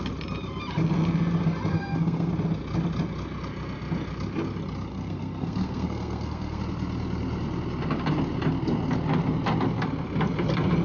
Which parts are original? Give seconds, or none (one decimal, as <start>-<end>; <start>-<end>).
0.0-1.7; 2.3-4.9; 6.6-10.8